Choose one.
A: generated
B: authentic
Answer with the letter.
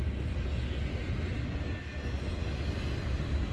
B